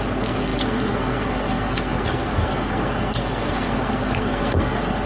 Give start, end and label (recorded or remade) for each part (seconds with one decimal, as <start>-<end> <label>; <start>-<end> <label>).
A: 0.0-5.0 remade